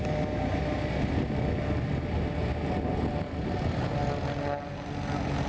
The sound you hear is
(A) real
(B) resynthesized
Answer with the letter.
A